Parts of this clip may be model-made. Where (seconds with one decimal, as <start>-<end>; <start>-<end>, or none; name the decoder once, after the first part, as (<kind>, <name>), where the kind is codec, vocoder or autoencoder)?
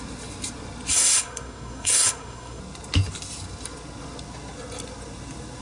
0.9-2.6 (codec, SNAC)